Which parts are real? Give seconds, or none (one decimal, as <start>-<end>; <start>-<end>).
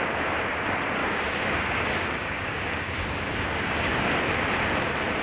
0.0-1.0; 4.1-5.2